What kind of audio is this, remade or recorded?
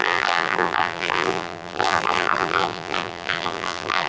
remade